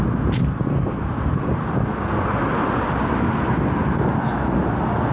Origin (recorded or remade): recorded